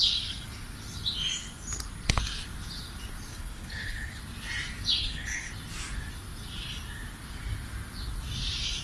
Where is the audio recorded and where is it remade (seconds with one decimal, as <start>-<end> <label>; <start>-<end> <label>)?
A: 0.0-3.3 recorded; 3.3-4.2 remade; 4.2-5.0 recorded; 5.0-5.5 remade; 5.5-8.8 recorded